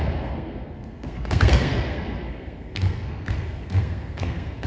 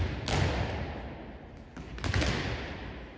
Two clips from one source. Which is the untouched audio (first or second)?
second